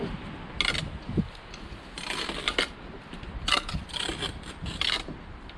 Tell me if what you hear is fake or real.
real